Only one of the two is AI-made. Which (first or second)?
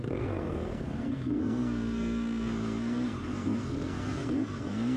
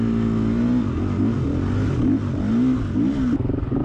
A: first